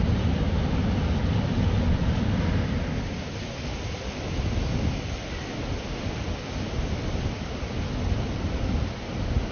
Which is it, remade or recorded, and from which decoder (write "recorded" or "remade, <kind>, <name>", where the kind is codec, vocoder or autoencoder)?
recorded